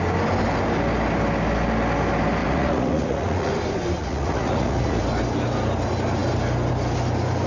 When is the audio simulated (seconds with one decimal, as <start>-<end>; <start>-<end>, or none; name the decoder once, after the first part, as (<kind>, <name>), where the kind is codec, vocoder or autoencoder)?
2.4-3.5 (vocoder, Vocos); 4.0-5.0